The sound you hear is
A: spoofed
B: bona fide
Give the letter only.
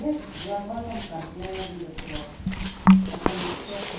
B